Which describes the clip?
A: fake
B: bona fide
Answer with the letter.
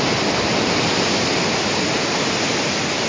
B